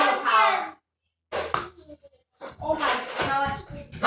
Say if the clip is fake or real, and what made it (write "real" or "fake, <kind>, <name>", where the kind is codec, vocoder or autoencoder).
real